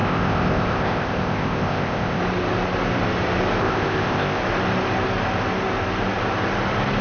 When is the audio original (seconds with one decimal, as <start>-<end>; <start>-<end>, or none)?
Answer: 2.2-3.6; 4.4-7.0